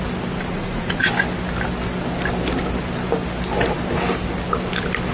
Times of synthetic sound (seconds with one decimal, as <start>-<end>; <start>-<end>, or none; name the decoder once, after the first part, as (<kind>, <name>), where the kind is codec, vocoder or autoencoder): 0.5-1.1 (vocoder, Vocos)